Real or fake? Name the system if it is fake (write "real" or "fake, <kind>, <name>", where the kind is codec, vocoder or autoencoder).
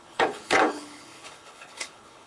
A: fake, codec, HILCodec